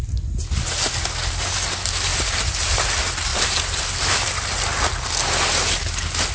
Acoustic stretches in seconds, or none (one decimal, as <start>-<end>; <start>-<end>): 0.0-2.1; 2.9-3.3; 4.3-6.3